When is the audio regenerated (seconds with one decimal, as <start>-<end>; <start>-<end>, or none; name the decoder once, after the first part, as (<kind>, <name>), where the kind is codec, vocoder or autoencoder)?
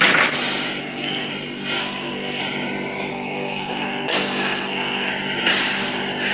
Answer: 0.8-1.3 (codec, SNAC); 1.8-2.4; 3.1-5.1